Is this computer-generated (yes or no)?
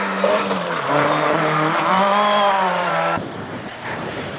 yes